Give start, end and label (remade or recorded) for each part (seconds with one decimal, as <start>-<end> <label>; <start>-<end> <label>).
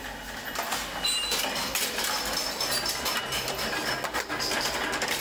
0.0-5.2 recorded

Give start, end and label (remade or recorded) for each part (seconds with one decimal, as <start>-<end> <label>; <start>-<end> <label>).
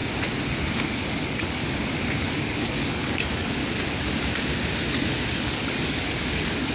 0.0-0.8 recorded; 0.8-1.6 remade; 1.6-2.2 recorded; 2.2-3.6 remade; 3.6-5.3 recorded; 5.3-6.7 remade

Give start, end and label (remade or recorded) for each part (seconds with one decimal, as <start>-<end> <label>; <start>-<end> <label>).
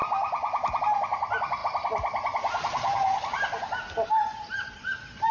0.0-5.3 recorded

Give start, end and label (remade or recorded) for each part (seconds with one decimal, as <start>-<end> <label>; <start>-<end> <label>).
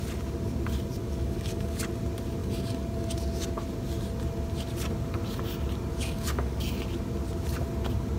0.0-1.0 recorded; 1.0-1.8 remade; 1.8-2.4 recorded; 2.4-3.1 remade; 3.1-5.9 recorded; 5.9-6.7 remade; 6.7-8.2 recorded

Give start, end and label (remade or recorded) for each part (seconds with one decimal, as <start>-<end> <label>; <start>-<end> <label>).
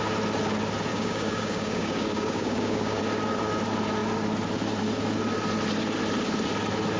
0.0-0.9 recorded; 0.9-3.0 remade; 3.0-7.0 recorded